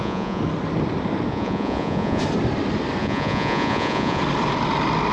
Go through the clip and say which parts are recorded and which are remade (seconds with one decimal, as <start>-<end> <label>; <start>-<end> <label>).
0.0-0.4 remade; 0.4-1.3 recorded; 1.3-2.2 remade; 2.2-3.0 recorded; 3.0-4.2 remade; 4.2-5.1 recorded

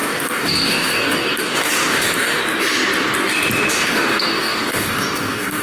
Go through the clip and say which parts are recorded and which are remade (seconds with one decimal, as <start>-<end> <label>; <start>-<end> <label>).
0.0-2.4 remade; 2.4-3.7 recorded; 3.7-5.6 remade

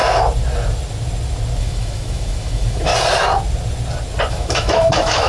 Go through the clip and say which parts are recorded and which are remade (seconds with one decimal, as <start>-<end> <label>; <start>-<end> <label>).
0.0-1.6 recorded; 1.6-2.9 remade; 2.9-4.3 recorded; 4.3-5.3 remade

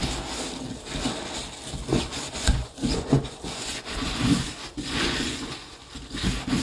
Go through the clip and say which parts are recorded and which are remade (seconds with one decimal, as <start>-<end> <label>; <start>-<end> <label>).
0.0-1.9 recorded; 1.9-5.9 remade; 5.9-6.6 recorded

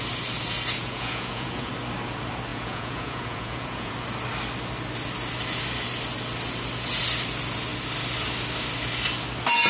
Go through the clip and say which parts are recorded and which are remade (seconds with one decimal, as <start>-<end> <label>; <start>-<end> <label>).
0.0-0.8 recorded; 0.8-1.7 remade; 1.7-2.5 recorded; 2.5-3.9 remade; 3.9-9.7 recorded

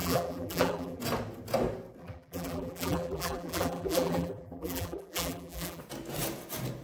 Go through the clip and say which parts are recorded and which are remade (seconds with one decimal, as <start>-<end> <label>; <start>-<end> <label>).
0.0-1.0 remade; 1.0-2.0 recorded; 2.0-5.8 remade; 5.8-6.8 recorded

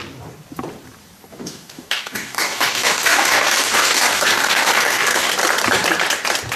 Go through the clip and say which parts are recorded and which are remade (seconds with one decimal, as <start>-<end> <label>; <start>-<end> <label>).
0.0-1.3 recorded; 1.3-5.3 remade; 5.3-6.6 recorded